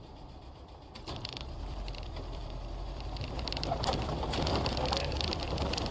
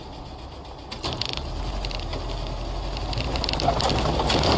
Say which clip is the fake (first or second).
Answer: first